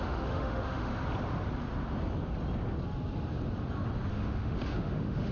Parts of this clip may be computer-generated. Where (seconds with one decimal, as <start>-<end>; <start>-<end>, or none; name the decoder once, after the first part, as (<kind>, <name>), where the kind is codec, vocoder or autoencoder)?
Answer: 0.0-0.9 (autoencoder, DAC-VAE); 4.1-5.3